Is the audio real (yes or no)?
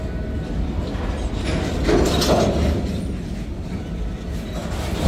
yes